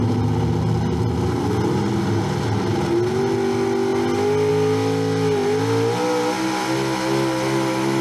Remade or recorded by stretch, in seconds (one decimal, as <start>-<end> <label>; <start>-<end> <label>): 0.0-8.0 recorded